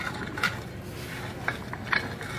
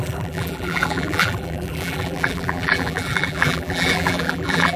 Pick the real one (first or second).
first